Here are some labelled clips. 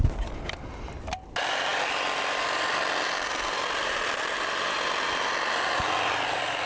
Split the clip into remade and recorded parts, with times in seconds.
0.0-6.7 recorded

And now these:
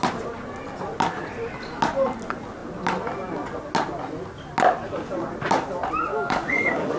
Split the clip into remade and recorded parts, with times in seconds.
0.0-6.1 recorded; 6.1-7.0 remade

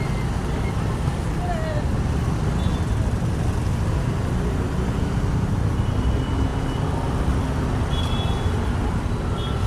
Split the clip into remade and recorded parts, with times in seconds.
0.0-9.7 recorded

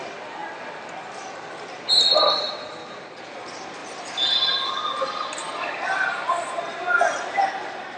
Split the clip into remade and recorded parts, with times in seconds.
0.0-8.0 recorded

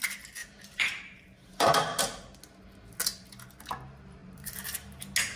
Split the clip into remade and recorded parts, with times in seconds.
0.0-0.4 recorded; 0.4-2.0 remade; 2.0-4.2 recorded; 4.2-5.0 remade; 5.0-5.4 recorded

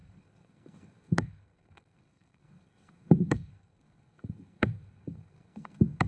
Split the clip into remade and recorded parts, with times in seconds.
0.0-6.1 remade

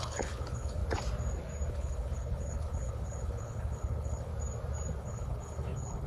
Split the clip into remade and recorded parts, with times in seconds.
0.0-0.8 remade; 0.8-1.7 recorded; 1.7-4.3 remade; 4.3-5.0 recorded; 5.0-6.1 remade

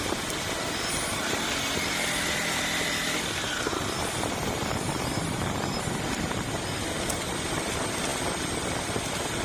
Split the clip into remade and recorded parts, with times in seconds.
0.0-9.4 recorded